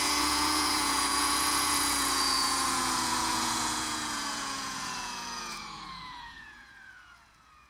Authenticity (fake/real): fake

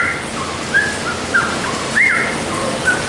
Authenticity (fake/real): real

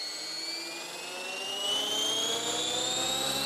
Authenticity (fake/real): real